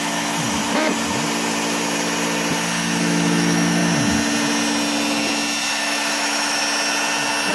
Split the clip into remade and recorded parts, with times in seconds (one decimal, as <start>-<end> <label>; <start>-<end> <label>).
0.0-0.6 remade; 0.6-3.0 recorded; 3.0-3.8 remade; 3.8-5.7 recorded; 5.7-6.6 remade; 6.6-7.5 recorded

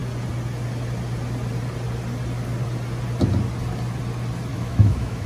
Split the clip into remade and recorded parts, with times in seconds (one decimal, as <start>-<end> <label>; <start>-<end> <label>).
0.0-4.5 recorded; 4.5-5.3 remade

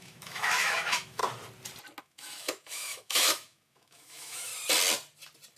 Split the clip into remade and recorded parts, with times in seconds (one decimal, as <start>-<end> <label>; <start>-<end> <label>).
0.0-1.2 remade; 1.2-2.0 recorded; 2.0-4.5 remade; 4.5-5.6 recorded

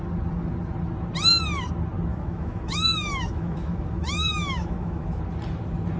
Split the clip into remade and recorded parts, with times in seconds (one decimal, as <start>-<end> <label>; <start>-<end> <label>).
0.0-2.1 recorded; 2.1-5.2 remade; 5.2-6.0 recorded

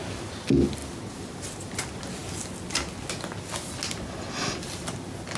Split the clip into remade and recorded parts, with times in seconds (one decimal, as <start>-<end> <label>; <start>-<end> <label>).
0.0-5.4 recorded

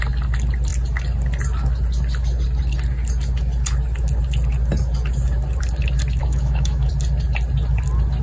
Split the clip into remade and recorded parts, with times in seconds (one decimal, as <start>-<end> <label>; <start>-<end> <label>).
0.0-6.2 recorded; 6.2-6.9 remade; 6.9-8.2 recorded